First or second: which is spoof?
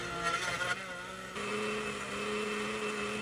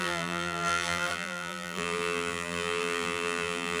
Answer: second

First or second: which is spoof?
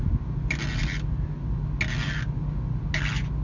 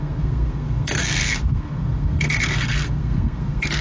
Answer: second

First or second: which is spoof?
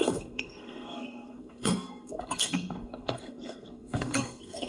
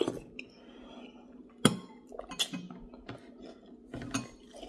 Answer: first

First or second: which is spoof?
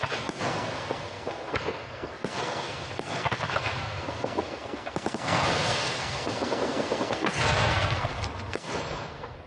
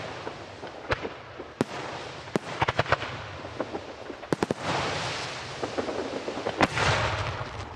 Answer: first